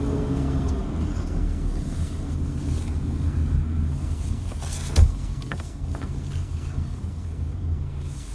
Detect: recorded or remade remade